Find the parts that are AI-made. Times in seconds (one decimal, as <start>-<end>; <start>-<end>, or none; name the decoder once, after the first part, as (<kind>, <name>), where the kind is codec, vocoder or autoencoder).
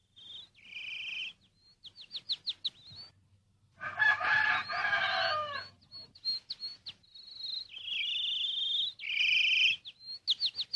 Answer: none